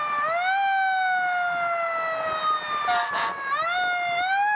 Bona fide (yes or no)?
yes